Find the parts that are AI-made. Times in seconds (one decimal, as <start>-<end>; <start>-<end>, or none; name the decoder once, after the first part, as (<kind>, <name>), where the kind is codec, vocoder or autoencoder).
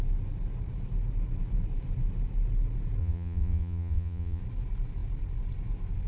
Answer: 3.0-4.4 (vocoder, Vocos)